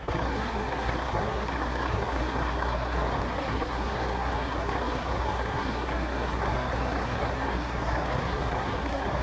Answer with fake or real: fake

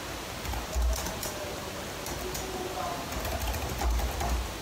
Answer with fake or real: real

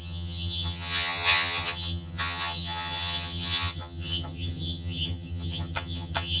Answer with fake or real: fake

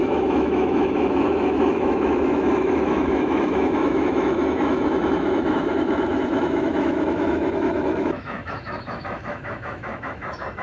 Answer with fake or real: fake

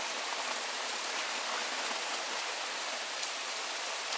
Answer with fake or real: fake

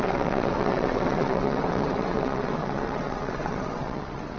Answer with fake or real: fake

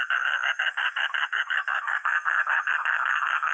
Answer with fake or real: fake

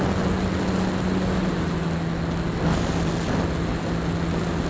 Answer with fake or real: real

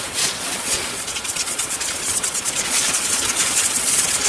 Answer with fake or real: fake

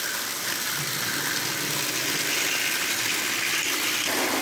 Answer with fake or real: real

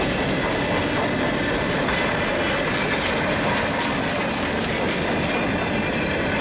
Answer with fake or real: real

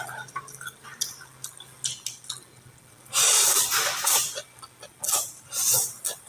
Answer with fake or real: real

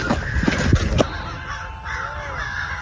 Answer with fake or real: real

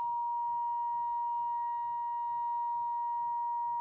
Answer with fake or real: real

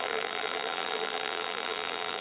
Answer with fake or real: fake